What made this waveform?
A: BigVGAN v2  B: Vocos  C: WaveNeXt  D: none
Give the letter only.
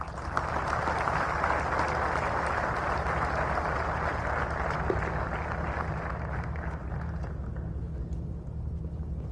D